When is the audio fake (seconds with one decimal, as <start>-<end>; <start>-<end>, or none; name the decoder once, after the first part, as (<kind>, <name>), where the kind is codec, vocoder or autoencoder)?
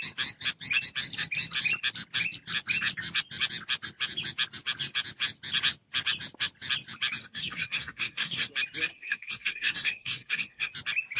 7.2-8.5 (codec, SNAC); 8.9-10.7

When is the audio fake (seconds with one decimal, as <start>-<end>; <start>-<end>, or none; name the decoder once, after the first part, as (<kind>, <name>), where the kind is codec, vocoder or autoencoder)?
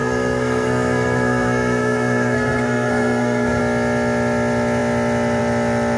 0.0-3.6 (codec, SNAC)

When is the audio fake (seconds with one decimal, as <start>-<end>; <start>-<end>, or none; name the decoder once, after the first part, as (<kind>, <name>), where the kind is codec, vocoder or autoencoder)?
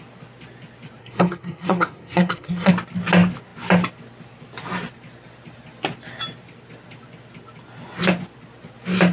1.0-2.7 (codec, SNAC)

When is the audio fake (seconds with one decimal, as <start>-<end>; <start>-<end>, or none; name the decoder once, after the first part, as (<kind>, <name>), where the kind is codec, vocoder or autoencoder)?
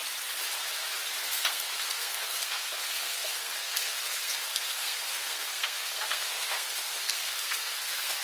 1.2-8.2 (codec, SNAC)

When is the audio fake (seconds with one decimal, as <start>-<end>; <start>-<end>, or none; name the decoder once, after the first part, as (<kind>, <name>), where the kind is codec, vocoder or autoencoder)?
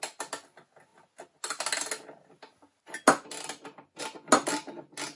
none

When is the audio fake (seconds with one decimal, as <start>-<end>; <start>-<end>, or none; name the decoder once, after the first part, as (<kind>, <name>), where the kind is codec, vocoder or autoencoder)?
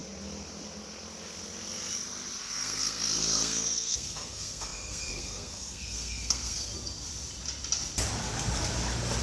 2.4-6.7 (codec, SNAC)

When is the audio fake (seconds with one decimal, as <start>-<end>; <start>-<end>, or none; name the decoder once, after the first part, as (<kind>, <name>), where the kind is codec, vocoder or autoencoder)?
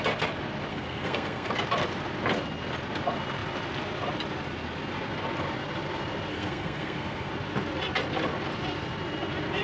0.7-1.5 (codec, SNAC); 6.3-7.3